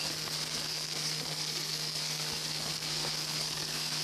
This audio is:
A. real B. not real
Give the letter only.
B